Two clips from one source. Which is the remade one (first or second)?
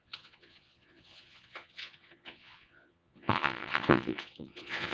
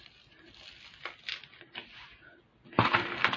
first